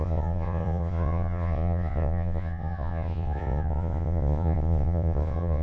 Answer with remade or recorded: remade